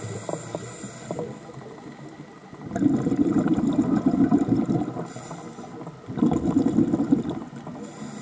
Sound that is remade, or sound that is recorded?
recorded